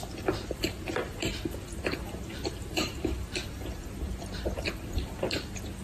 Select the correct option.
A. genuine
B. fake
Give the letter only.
B